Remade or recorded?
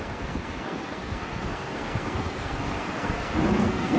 remade